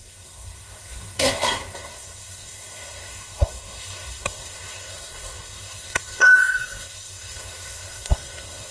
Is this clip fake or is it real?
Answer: fake